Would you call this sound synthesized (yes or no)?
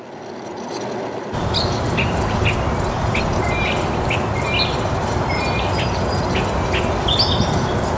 no